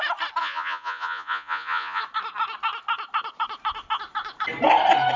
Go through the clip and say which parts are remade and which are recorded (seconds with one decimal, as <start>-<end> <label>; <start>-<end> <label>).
0.0-0.4 recorded; 0.4-2.0 remade; 2.0-5.2 recorded